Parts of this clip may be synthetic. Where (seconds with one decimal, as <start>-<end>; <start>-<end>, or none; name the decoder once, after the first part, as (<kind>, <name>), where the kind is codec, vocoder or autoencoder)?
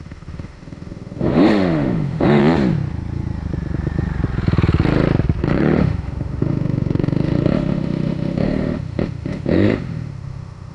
0.0-2.4 (autoencoder, DAC-VAE); 5.4-10.7